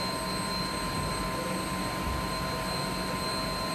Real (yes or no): yes